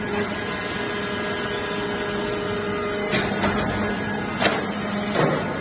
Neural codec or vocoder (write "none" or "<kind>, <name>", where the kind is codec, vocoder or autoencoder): none